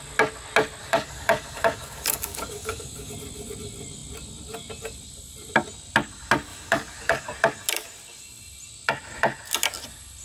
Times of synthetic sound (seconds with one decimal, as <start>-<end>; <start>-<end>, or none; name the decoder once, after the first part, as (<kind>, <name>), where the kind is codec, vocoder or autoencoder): 0.8-3.1 (codec, DAC); 6.5-7.3